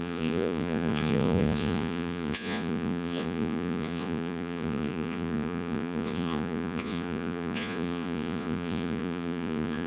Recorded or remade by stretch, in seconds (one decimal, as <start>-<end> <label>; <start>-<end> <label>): 0.0-9.9 remade

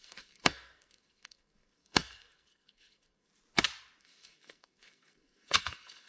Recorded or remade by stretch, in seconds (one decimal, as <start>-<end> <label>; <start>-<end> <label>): 0.0-3.3 remade; 3.3-4.0 recorded; 4.0-6.1 remade

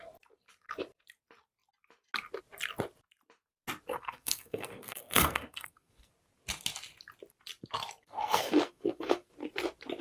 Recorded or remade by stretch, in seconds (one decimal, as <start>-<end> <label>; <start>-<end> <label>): 0.0-3.9 recorded; 3.9-6.1 remade; 6.1-8.0 recorded; 8.0-9.3 remade; 9.3-10.0 recorded

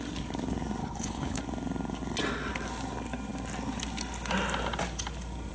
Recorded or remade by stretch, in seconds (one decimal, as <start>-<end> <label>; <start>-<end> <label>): 0.0-0.8 recorded; 0.8-1.4 remade; 1.4-5.5 recorded

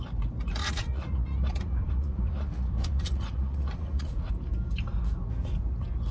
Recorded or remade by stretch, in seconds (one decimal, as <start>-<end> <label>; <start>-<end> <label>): 0.0-0.6 recorded; 0.6-4.3 remade; 4.3-6.1 recorded

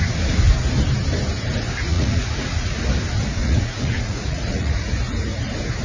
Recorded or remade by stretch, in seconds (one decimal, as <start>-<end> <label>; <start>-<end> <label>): 0.0-1.9 recorded; 1.9-2.8 remade; 2.8-3.4 recorded; 3.4-4.9 remade; 4.9-5.8 recorded

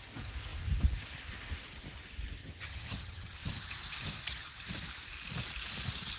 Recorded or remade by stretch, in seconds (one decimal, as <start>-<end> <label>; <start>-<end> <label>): 0.0-2.4 recorded; 2.4-3.5 remade; 3.5-6.2 recorded